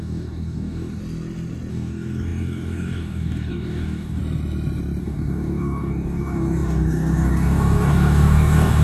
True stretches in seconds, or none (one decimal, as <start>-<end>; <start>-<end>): 1.0-1.7; 4.2-5.0